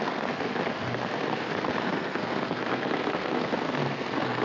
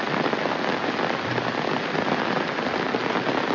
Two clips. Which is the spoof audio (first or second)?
first